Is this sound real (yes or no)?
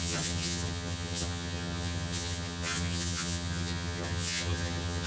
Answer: no